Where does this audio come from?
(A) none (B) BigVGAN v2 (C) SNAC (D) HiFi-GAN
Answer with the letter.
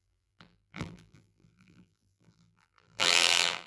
B